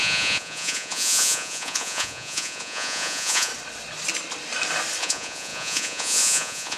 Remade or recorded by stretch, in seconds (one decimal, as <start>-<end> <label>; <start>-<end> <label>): 0.0-3.5 remade; 3.5-5.0 recorded; 5.0-6.8 remade